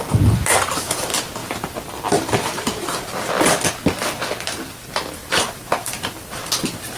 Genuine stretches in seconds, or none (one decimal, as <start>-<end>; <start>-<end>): 0.0-5.2; 6.5-7.0

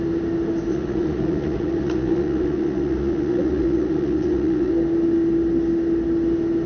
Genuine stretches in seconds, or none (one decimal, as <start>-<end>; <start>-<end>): 0.0-0.7; 4.7-6.7

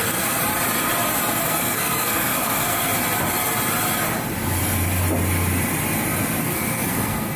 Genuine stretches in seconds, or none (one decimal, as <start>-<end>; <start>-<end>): 0.4-1.4; 2.9-6.4

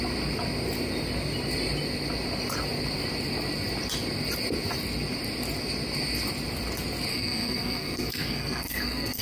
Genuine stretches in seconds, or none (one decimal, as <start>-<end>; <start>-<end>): 0.0-7.1

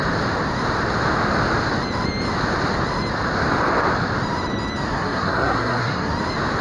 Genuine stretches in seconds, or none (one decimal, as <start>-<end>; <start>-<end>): 0.0-4.9; 6.1-6.6

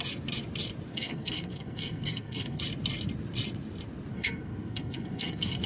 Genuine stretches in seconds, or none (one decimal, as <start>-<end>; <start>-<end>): 0.0-0.9; 2.6-4.1